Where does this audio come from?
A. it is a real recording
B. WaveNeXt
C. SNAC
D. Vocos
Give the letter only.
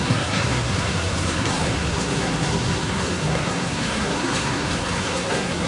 C